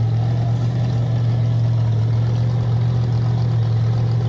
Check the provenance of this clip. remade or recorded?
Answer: recorded